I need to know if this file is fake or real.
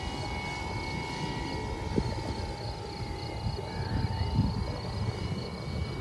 real